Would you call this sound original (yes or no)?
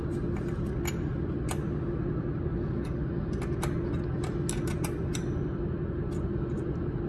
yes